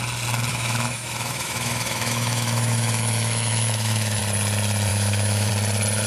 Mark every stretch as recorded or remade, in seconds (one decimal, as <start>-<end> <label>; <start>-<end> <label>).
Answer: 0.0-0.5 recorded; 0.5-4.2 remade; 4.2-4.9 recorded; 4.9-5.5 remade; 5.5-6.1 recorded